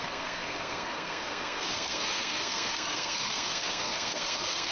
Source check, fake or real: fake